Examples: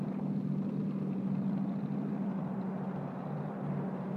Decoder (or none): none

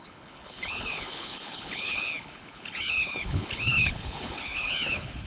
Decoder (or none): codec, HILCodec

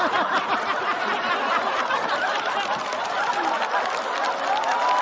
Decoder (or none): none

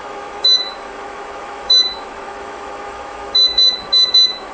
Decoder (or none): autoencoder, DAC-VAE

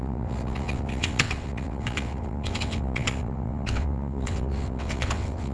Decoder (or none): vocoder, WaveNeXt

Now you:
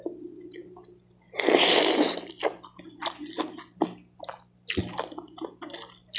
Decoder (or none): none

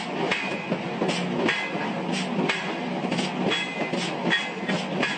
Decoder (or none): none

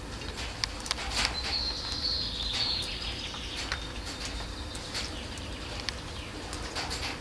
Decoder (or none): none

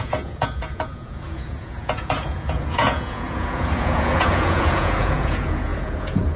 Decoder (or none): vocoder, Vocos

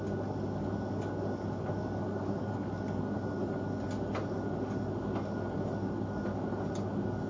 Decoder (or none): none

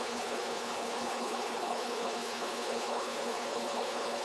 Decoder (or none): codec, HILCodec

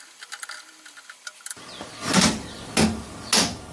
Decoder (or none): none